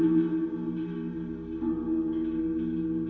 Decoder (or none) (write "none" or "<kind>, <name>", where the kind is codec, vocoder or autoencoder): none